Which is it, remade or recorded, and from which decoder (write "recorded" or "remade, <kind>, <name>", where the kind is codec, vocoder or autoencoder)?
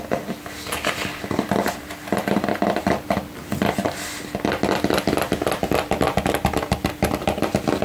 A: recorded